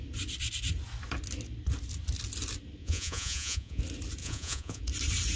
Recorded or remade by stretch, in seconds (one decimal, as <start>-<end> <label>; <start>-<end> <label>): 0.0-2.8 recorded; 2.8-3.8 remade; 3.8-4.2 recorded; 4.2-4.8 remade; 4.8-5.4 recorded